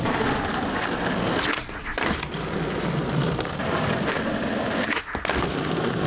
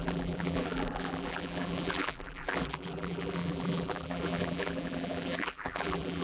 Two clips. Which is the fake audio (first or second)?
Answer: second